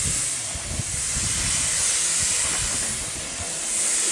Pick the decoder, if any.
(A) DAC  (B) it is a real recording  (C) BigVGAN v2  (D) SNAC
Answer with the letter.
B